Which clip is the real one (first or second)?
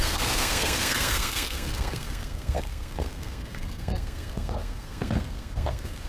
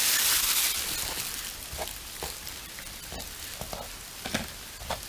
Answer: second